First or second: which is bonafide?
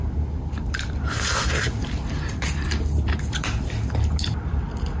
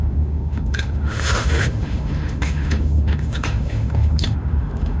first